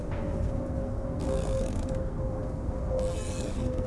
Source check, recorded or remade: remade